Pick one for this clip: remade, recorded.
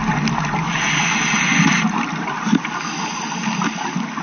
recorded